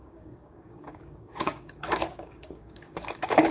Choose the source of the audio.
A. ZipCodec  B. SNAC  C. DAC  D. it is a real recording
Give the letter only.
C